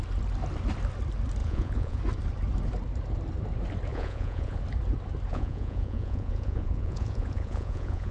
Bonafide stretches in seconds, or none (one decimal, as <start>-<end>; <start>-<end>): 0.0-1.4; 2.0-3.9; 4.6-5.3